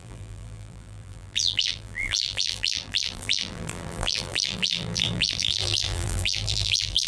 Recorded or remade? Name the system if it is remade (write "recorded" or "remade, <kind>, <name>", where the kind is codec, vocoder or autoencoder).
remade, vocoder, BigVGAN v2